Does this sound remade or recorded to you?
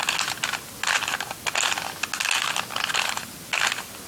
recorded